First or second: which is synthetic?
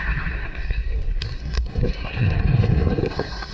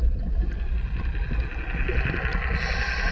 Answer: first